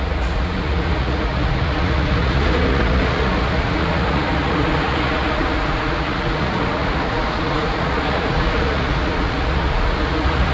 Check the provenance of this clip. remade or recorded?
remade